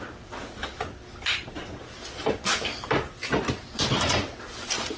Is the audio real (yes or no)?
yes